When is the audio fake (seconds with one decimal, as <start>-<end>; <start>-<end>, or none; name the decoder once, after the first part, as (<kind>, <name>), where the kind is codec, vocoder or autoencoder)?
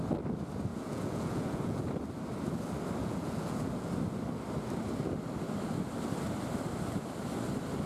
0.7-1.9 (vocoder, Vocos); 3.0-3.9